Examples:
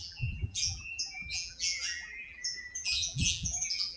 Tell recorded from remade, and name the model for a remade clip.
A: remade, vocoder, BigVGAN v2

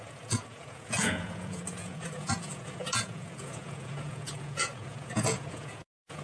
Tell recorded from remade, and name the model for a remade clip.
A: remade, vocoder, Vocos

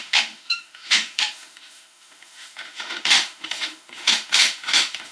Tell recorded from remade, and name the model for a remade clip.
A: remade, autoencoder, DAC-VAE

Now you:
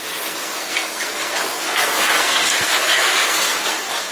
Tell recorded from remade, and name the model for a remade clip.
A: remade, codec, SNAC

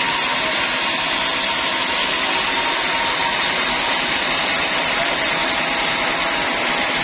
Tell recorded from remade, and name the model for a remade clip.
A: recorded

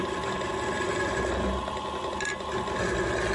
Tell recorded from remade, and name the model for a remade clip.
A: recorded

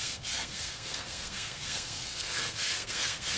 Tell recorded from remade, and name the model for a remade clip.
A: remade, codec, SNAC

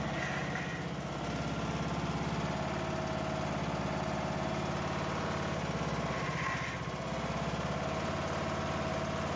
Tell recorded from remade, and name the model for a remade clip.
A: recorded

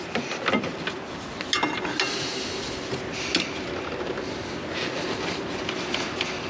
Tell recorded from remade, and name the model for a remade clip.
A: recorded